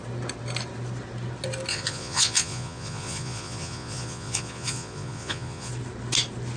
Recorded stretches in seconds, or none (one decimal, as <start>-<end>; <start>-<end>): 0.0-1.7; 5.7-6.6